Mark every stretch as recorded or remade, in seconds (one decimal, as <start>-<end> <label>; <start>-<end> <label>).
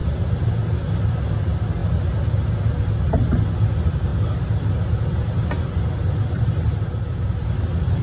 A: 0.0-8.0 recorded